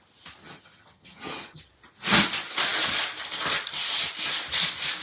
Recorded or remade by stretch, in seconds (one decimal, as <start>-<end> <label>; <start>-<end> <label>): 0.0-0.4 recorded; 0.4-1.6 remade; 1.6-5.0 recorded